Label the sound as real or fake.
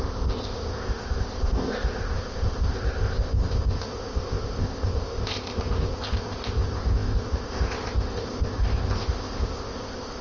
fake